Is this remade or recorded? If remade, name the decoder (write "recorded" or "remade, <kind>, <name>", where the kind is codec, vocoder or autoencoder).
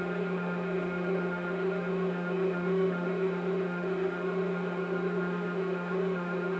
remade, autoencoder, DAC-VAE